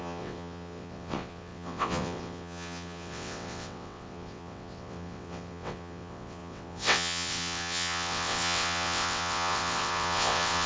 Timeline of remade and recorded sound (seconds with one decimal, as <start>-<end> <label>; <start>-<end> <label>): 0.0-10.7 remade